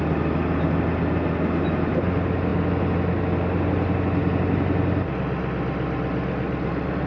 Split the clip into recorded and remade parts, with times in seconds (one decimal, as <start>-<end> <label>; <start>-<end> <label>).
0.0-7.1 recorded